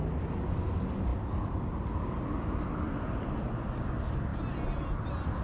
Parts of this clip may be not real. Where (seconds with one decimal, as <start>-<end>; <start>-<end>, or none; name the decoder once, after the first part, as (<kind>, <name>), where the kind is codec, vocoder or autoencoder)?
none